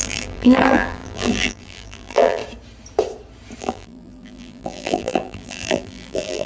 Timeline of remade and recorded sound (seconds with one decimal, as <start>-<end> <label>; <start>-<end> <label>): 0.0-2.4 remade; 2.4-3.6 recorded; 3.6-6.5 remade